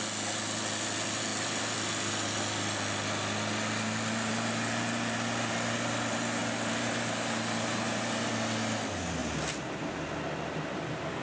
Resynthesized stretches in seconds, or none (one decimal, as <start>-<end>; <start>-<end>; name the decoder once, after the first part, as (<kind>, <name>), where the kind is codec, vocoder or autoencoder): none